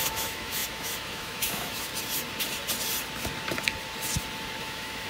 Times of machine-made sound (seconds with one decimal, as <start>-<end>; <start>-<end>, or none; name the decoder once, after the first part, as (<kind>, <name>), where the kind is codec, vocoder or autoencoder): 0.0-1.9 (autoencoder, DAC-VAE); 4.6-5.1